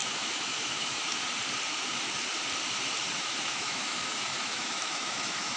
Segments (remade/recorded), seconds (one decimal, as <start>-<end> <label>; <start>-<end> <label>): 0.0-1.2 remade; 1.2-3.1 recorded; 3.1-5.6 remade